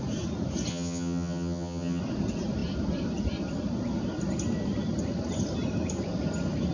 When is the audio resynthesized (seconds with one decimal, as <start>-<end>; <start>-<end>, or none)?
0.7-2.0